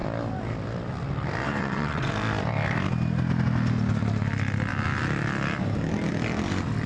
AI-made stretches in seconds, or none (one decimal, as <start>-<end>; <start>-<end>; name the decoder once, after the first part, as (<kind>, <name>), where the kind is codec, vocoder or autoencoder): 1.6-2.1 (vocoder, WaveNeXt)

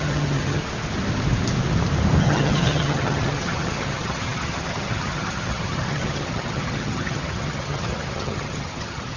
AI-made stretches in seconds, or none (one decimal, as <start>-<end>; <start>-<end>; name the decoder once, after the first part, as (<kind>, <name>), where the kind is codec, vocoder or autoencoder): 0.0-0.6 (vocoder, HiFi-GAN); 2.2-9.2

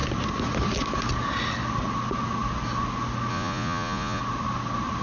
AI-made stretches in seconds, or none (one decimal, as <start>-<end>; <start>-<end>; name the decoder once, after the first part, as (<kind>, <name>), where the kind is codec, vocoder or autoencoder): 3.3-4.2 (vocoder, Vocos)

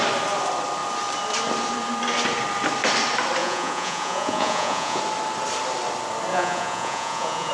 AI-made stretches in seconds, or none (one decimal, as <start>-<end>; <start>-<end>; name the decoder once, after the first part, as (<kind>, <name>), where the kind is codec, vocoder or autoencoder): 3.4-5.0 (vocoder, Vocos); 6.3-7.5

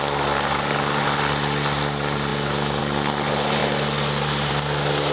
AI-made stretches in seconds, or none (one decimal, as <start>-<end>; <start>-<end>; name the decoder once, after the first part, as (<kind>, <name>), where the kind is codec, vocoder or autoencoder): none